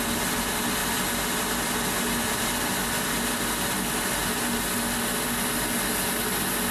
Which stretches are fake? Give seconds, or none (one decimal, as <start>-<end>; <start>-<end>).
none